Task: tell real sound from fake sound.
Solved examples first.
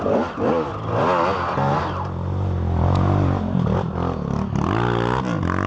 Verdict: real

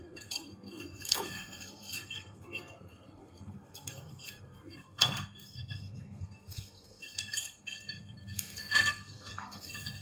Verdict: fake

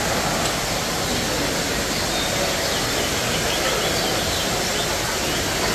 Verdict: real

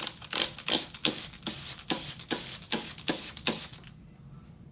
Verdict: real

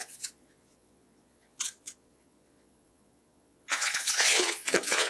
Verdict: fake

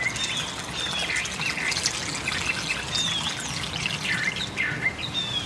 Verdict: real